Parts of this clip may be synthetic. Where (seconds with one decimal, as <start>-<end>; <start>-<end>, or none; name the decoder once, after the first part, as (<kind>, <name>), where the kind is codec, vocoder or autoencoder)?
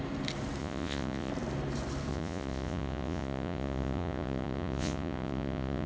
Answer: 0.6-1.3 (vocoder, Vocos); 2.1-5.9